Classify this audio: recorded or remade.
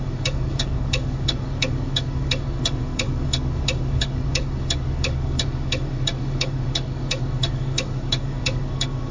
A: remade